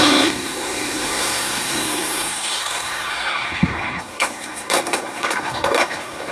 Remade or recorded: remade